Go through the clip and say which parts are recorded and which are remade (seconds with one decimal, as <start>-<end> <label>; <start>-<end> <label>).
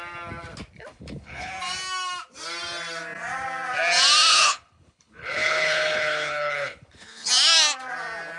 0.0-0.9 recorded; 0.9-1.5 remade; 1.5-4.3 recorded; 4.3-7.3 remade; 7.3-8.4 recorded